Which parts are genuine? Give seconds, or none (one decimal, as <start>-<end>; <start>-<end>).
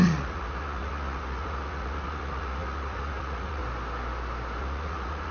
3.6-4.6